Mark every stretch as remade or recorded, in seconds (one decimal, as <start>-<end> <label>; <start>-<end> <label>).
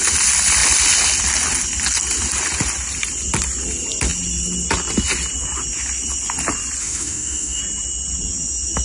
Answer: 0.0-6.8 recorded; 6.8-7.6 remade; 7.6-8.8 recorded